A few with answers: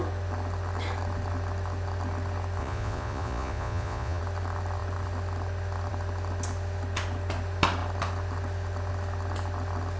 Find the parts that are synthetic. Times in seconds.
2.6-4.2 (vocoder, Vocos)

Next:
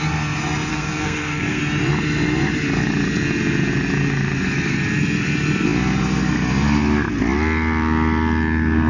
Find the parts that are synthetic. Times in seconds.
0.7-1.6 (codec, SNAC)

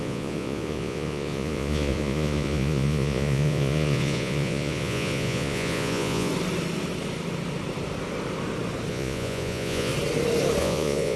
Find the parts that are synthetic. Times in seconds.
0.0-6.3 (vocoder, Vocos); 8.9-9.9; 10.6-11.2

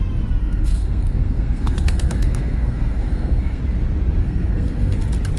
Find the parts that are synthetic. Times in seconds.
0.4-3.6 (codec, SNAC); 4.2-5.0

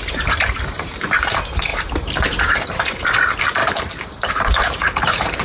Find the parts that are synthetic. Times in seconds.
0.0-5.4 (vocoder, BigVGAN v2)

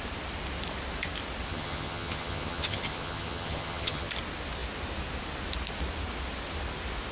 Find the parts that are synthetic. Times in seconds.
1.5-4.1 (vocoder, HiFi-GAN)

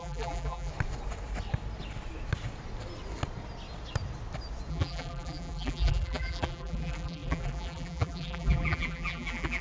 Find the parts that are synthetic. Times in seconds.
0.0-0.7 (vocoder, BigVGAN v2); 4.7-9.6

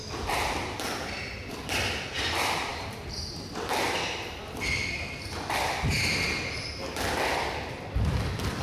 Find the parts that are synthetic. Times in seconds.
none